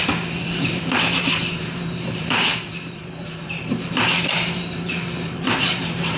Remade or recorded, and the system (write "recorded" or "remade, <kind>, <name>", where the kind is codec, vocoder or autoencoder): remade, vocoder, BigVGAN v2